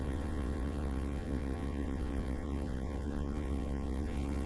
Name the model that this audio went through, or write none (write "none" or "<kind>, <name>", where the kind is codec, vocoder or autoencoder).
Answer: vocoder, WaveNeXt